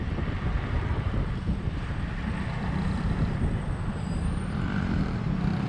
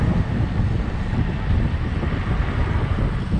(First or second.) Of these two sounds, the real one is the second